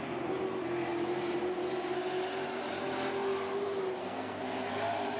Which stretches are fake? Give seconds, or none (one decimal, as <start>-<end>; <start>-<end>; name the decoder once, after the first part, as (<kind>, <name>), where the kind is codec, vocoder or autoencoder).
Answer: 4.0-4.7 (codec, SNAC)